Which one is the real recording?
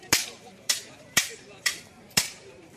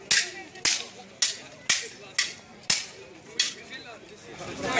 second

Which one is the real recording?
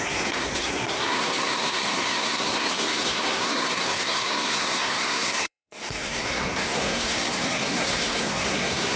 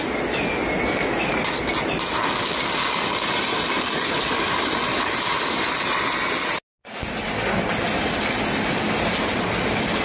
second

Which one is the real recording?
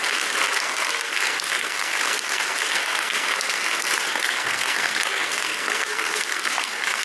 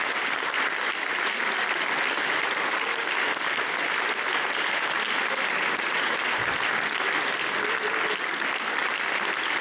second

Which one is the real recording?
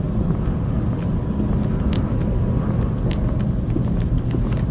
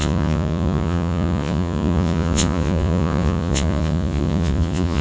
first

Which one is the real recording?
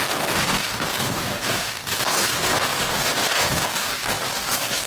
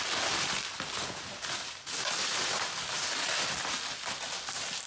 second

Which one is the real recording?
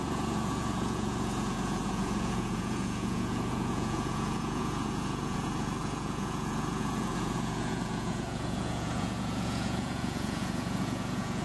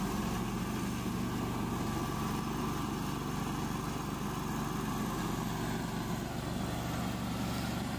second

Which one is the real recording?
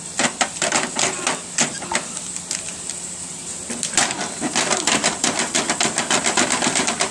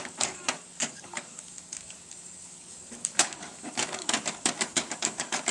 first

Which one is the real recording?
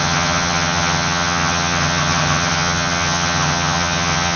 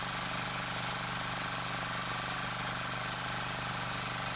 second